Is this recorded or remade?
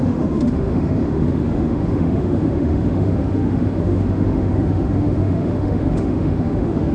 remade